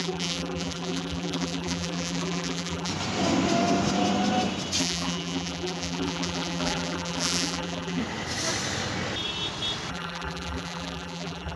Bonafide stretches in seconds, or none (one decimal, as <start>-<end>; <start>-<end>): 2.9-4.8; 8.0-9.9